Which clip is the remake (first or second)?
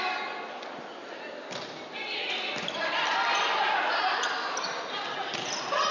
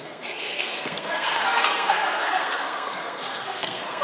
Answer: second